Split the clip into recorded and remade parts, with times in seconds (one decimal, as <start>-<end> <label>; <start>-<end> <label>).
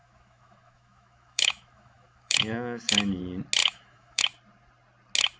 0.0-3.2 remade; 3.2-3.6 recorded; 3.6-4.2 remade; 4.2-5.4 recorded